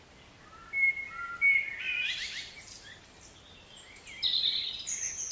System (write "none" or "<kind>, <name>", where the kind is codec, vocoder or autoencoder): none